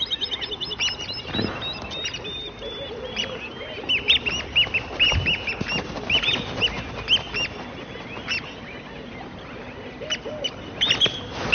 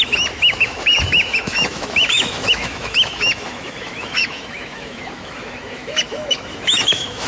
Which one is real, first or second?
first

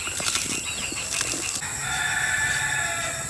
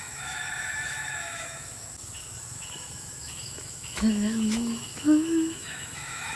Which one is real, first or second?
first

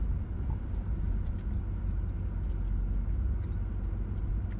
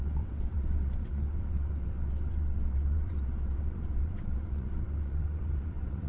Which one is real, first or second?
first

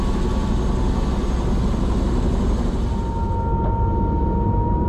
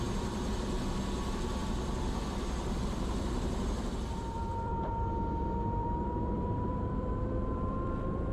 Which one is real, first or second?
first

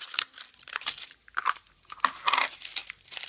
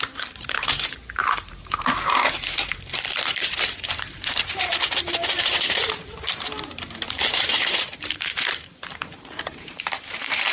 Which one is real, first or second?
first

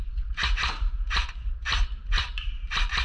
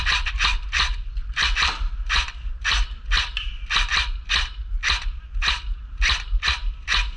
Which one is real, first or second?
second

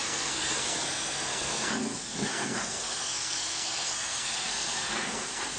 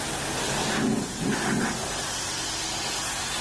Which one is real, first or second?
second